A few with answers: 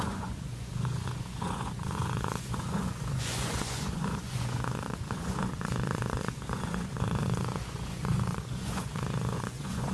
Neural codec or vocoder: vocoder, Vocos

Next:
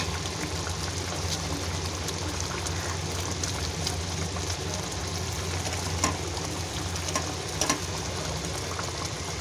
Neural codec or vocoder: none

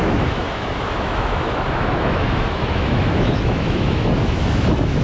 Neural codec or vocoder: autoencoder, DAC-VAE